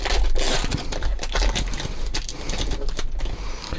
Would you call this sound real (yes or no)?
yes